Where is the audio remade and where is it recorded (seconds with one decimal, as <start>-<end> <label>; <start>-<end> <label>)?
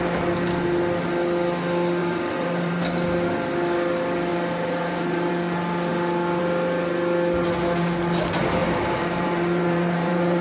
0.0-2.0 recorded; 2.0-2.7 remade; 2.7-4.3 recorded; 4.3-5.3 remade; 5.3-8.6 recorded; 8.6-10.4 remade